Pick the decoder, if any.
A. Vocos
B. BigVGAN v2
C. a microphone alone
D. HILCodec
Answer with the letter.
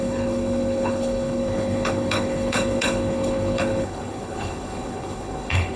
D